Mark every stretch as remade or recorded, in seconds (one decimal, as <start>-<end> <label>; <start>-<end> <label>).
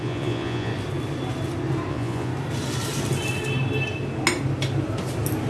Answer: 0.0-0.7 remade; 0.7-1.9 recorded; 1.9-2.3 remade; 2.3-5.5 recorded